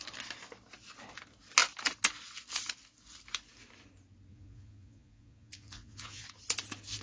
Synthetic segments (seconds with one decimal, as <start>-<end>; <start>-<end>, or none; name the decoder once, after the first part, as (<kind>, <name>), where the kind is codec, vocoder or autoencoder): 4.3-6.2 (vocoder, Vocos)